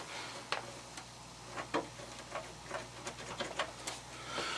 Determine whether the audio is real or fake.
real